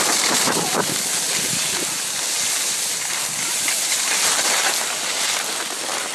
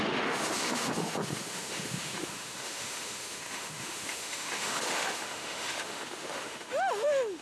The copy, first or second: second